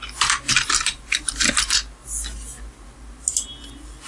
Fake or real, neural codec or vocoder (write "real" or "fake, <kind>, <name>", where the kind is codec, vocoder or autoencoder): real